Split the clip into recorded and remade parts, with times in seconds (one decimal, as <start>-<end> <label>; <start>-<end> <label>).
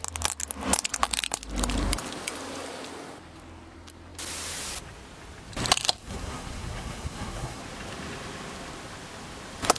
0.0-6.0 recorded; 6.0-7.6 remade; 7.6-9.8 recorded